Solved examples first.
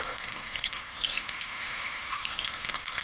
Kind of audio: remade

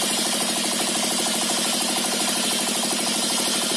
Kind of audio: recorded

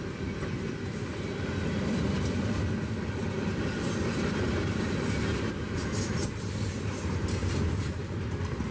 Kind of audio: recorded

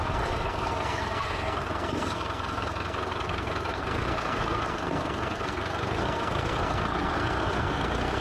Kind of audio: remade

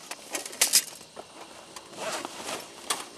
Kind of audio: recorded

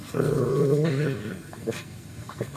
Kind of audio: remade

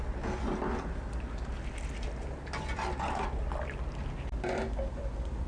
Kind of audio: recorded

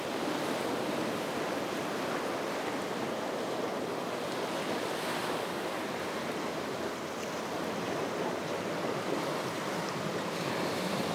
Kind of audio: recorded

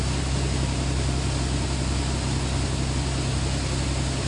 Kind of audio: recorded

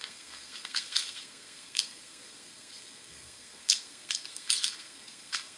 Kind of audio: remade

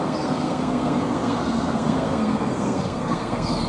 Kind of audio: remade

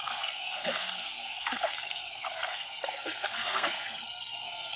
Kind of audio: remade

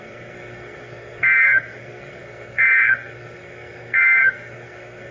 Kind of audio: remade